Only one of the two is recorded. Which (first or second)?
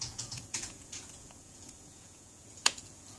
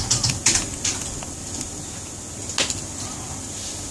second